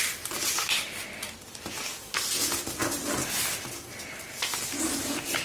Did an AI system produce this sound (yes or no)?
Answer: no